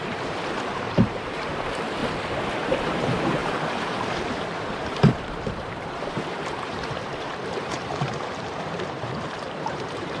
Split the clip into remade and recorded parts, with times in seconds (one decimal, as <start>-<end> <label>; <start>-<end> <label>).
0.0-2.0 remade; 2.0-2.6 recorded; 2.6-10.2 remade